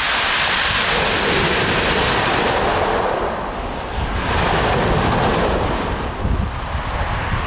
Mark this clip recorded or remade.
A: remade